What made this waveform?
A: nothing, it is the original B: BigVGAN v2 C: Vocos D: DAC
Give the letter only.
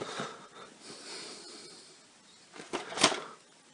A